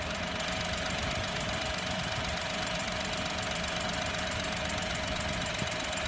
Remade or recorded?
remade